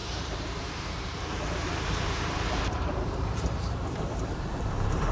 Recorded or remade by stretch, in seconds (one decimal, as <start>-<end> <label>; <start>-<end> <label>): 0.0-5.1 remade